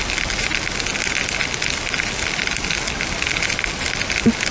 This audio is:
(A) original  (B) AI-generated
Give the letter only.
A